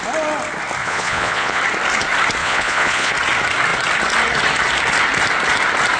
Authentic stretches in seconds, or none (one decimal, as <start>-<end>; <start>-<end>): 0.0-0.8; 1.6-2.4; 3.1-6.0